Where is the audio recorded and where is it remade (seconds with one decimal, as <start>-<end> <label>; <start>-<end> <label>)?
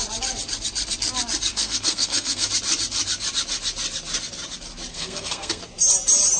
0.0-1.5 recorded; 1.5-2.5 remade; 2.5-4.9 recorded; 4.9-5.6 remade; 5.6-6.4 recorded